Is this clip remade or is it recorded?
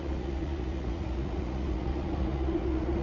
remade